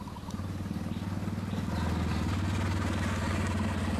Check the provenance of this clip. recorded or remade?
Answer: recorded